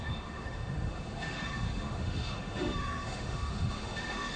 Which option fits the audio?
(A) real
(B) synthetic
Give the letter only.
B